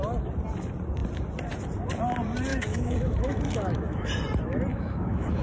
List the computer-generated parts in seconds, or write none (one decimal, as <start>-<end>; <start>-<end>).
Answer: 2.5-4.1; 4.7-5.4